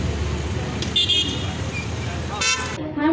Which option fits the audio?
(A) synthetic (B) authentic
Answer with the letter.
B